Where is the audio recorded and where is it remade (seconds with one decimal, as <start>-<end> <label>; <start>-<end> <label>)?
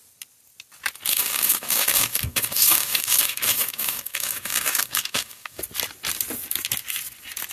0.0-1.1 recorded; 1.1-5.6 remade; 5.6-7.5 recorded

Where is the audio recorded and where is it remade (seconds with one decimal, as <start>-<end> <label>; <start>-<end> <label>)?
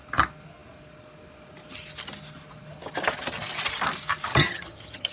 0.0-4.3 recorded; 4.3-5.1 remade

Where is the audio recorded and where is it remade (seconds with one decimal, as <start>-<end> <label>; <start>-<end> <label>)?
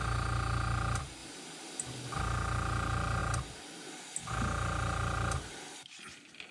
0.0-6.5 recorded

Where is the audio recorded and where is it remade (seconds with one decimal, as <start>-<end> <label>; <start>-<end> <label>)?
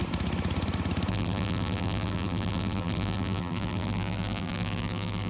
0.0-1.1 recorded; 1.1-5.3 remade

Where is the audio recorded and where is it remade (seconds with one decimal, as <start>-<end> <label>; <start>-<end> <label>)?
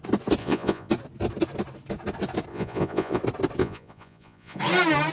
0.0-0.4 recorded; 0.4-0.9 remade; 0.9-2.5 recorded; 2.5-3.2 remade; 3.2-3.6 recorded; 3.6-4.6 remade; 4.6-5.1 recorded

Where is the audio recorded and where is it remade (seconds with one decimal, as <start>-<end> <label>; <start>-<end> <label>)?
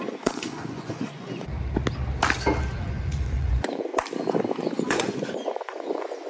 0.0-1.5 remade; 1.5-2.8 recorded; 2.8-3.9 remade; 3.9-4.6 recorded; 4.6-6.3 remade